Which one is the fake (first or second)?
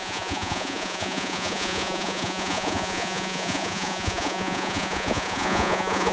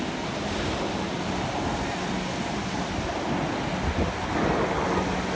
first